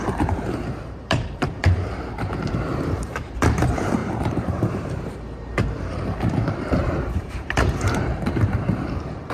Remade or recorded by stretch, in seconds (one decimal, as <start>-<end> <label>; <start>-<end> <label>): 0.0-9.3 remade